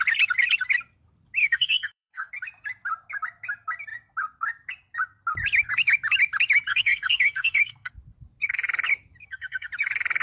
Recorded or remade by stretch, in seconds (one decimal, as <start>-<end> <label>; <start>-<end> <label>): 0.0-1.4 recorded; 1.4-2.3 remade; 2.3-6.7 recorded; 6.7-7.9 remade; 7.9-9.2 recorded; 9.2-9.7 remade; 9.7-10.2 recorded